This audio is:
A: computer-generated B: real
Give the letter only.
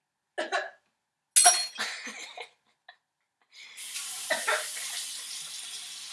B